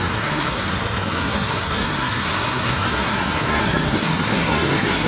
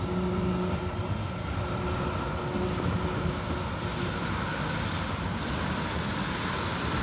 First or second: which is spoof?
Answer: first